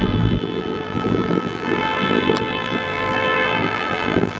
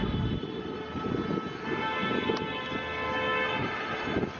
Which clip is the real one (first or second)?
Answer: second